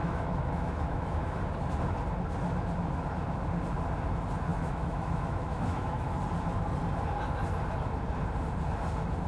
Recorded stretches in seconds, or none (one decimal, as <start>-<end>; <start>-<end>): 1.4-4.5; 6.2-9.3